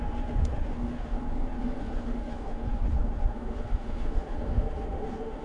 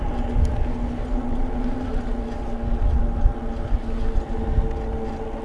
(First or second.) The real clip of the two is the second